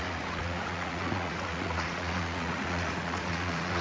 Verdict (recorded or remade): remade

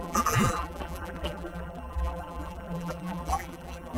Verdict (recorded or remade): remade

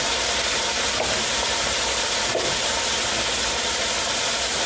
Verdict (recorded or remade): recorded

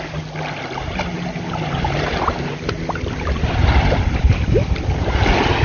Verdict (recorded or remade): recorded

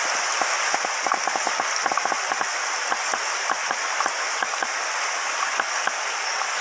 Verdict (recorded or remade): recorded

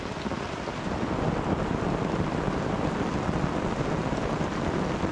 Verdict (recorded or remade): recorded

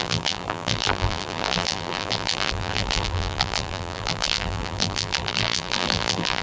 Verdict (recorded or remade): remade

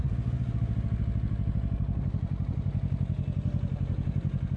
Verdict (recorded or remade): recorded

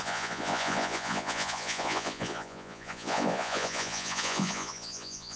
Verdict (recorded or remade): remade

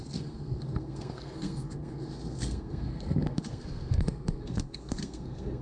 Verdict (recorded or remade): remade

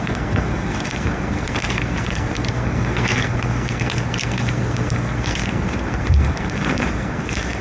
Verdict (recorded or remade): remade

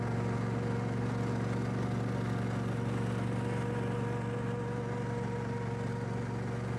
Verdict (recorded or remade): recorded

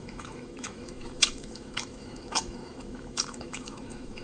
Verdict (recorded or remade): remade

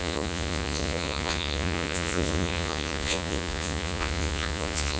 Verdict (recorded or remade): remade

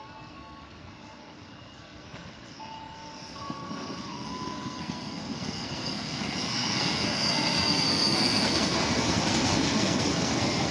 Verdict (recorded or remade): remade